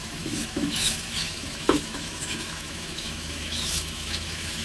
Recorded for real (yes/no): no